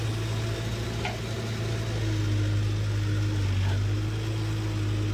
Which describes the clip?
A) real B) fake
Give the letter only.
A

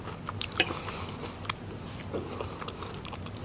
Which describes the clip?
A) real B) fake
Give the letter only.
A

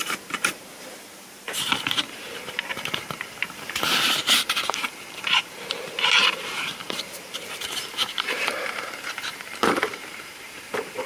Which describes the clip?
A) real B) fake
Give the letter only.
B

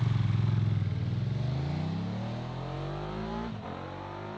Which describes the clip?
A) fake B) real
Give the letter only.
B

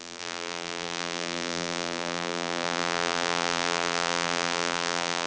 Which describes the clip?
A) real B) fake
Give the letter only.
B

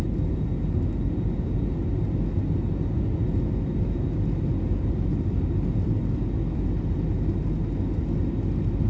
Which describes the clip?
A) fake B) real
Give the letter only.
B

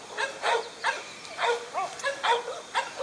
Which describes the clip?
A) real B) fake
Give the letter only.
B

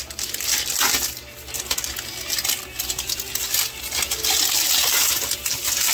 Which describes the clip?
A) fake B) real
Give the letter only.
B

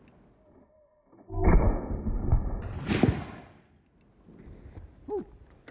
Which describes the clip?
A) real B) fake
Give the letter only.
A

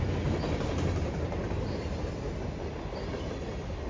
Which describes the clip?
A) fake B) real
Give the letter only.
B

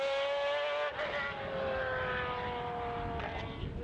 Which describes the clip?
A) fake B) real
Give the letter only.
B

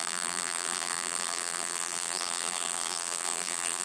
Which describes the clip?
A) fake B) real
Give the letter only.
A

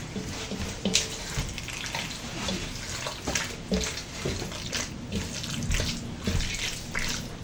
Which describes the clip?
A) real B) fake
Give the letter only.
A